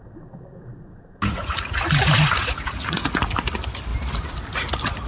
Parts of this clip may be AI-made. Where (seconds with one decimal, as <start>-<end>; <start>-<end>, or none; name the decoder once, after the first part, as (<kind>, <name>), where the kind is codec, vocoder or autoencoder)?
0.6-3.2 (vocoder, Vocos)